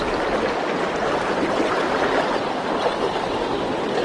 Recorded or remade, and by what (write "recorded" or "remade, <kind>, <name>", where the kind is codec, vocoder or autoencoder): recorded